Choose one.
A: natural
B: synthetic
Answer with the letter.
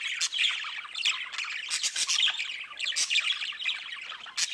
A